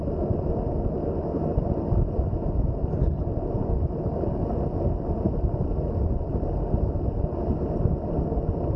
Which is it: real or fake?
real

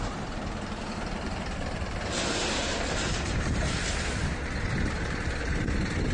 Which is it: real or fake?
fake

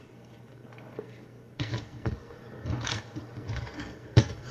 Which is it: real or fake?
fake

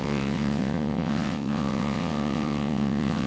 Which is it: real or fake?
fake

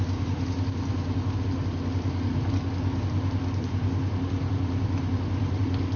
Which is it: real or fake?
real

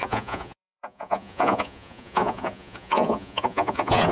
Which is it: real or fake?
fake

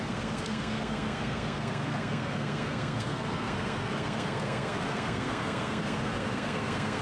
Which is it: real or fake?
fake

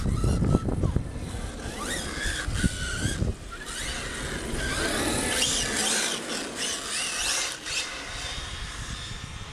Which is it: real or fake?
real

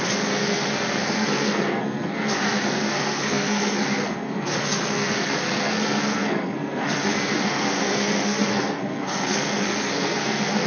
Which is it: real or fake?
fake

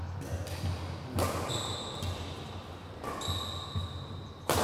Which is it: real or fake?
real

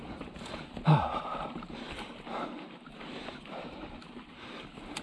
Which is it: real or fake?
fake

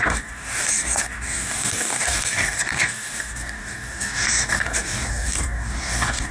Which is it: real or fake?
fake